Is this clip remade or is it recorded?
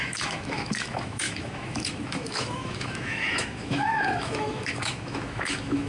remade